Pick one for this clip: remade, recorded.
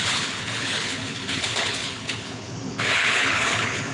remade